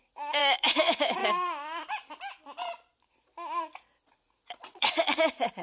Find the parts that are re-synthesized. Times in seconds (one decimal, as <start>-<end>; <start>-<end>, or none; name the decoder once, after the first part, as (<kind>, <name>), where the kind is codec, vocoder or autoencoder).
0.0-1.2 (vocoder, Vocos); 4.1-5.6